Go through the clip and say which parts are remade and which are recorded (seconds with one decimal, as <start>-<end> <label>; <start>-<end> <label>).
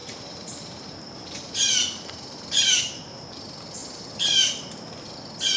0.0-3.4 remade; 3.4-3.8 recorded; 3.8-4.7 remade; 4.7-5.6 recorded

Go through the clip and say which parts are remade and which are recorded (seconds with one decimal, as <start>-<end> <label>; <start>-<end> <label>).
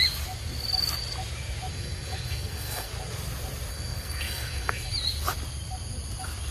0.0-1.7 recorded; 1.7-2.9 remade; 2.9-3.7 recorded; 3.7-4.9 remade; 4.9-6.5 recorded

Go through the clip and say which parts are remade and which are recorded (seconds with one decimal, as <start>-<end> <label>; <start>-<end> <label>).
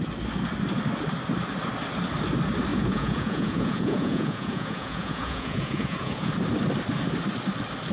0.0-2.7 recorded; 2.7-6.3 remade; 6.3-7.9 recorded